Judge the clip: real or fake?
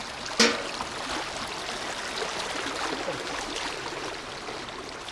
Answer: real